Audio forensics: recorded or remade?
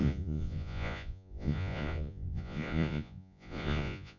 remade